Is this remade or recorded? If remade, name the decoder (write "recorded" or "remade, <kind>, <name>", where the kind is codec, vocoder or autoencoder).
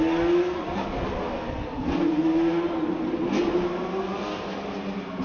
recorded